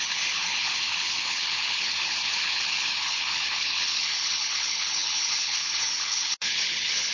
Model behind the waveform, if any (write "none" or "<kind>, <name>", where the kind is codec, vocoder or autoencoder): codec, HILCodec